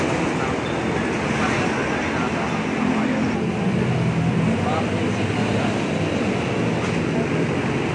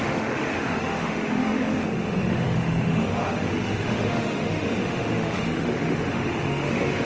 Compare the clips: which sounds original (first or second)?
first